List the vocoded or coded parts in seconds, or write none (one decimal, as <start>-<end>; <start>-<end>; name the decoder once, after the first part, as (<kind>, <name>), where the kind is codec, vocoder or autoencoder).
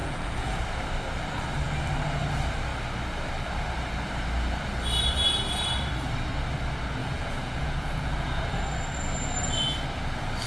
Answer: 0.0-0.6 (vocoder, Vocos); 7.0-8.6